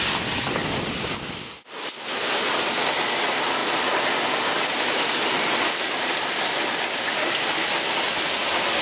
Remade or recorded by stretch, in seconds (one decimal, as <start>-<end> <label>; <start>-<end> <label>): 0.0-3.6 recorded; 3.6-7.7 remade; 7.7-8.8 recorded